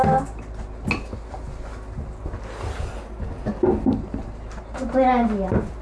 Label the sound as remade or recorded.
recorded